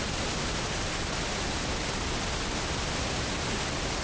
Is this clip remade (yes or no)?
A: no